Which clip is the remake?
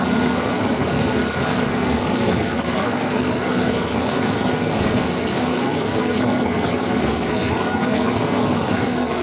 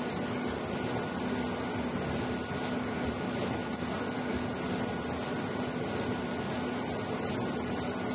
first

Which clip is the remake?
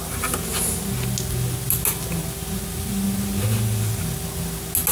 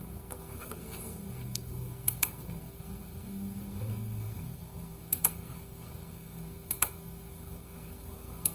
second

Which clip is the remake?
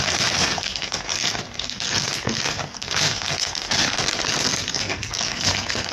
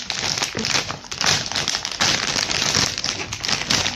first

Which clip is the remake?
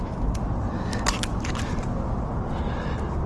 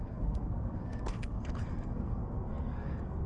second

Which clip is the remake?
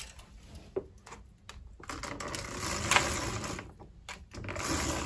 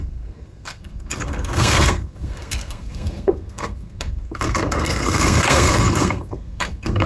second